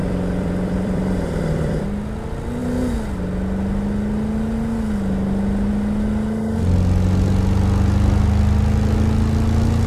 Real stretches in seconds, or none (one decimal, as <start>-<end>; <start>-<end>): 1.8-9.9